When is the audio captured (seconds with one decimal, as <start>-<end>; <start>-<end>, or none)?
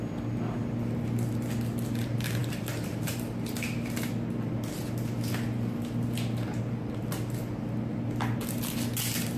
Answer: 0.0-2.4; 4.1-9.4